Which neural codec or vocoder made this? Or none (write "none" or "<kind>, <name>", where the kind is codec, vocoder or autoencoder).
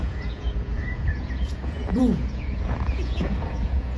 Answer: vocoder, Vocos